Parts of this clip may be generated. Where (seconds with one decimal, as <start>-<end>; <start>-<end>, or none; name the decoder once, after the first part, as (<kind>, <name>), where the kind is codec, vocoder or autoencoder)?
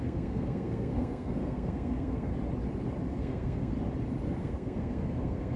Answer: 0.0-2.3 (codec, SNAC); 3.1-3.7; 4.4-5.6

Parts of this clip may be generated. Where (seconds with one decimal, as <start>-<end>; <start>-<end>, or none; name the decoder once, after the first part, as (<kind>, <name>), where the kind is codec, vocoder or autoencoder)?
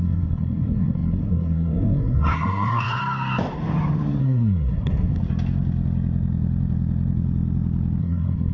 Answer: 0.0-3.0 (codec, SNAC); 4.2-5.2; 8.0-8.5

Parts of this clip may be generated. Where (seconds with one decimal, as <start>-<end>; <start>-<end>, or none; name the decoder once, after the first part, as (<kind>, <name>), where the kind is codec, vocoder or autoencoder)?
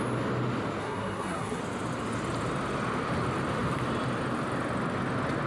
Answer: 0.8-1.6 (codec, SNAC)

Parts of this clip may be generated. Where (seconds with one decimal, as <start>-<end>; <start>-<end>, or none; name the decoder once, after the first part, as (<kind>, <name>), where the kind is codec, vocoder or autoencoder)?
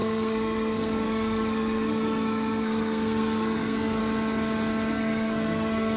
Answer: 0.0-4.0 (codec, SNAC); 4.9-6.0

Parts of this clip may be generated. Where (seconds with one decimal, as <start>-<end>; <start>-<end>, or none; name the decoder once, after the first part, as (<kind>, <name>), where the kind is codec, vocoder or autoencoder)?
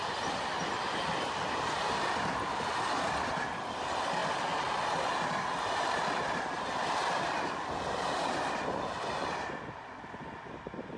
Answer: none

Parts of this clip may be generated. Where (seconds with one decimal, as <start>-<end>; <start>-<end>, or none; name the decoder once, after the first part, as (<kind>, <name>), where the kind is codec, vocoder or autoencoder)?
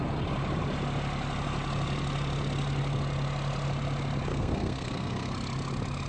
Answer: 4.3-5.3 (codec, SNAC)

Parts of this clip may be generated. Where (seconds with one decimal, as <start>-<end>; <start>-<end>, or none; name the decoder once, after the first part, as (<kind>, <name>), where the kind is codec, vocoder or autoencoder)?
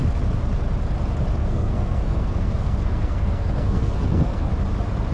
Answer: 1.4-4.5 (codec, SNAC)